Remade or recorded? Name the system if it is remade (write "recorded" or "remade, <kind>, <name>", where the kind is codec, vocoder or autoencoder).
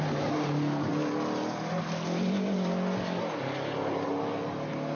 recorded